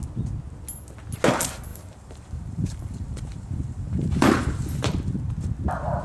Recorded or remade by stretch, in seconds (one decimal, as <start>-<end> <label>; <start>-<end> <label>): 0.0-1.7 recorded; 1.7-5.3 remade; 5.3-6.0 recorded